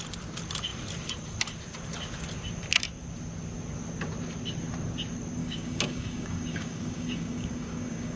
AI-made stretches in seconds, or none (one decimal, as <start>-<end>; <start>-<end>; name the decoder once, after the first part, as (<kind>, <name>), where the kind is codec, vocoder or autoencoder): 5.4-8.2 (codec, DAC)